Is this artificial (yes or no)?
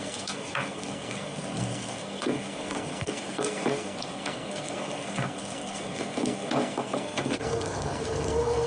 yes